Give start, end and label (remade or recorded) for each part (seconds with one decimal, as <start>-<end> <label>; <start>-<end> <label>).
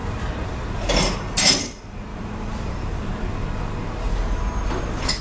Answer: 0.0-2.1 recorded; 2.1-3.1 remade; 3.1-4.1 recorded; 4.1-5.2 remade